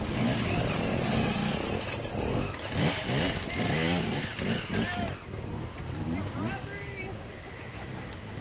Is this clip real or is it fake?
real